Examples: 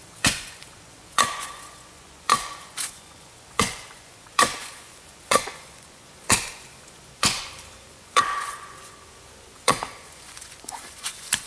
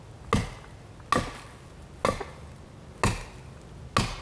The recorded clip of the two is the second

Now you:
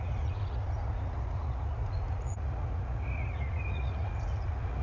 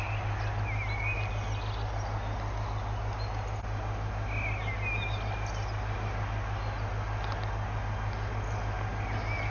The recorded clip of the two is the second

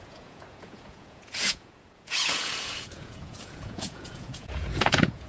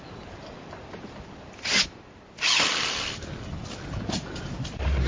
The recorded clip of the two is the second